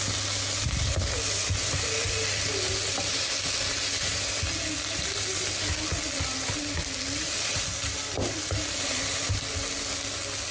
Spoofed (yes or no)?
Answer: no